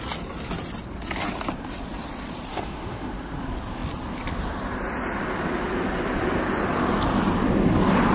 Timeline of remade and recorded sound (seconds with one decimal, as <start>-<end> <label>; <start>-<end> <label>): 0.0-2.5 recorded; 2.5-3.4 remade; 3.4-8.1 recorded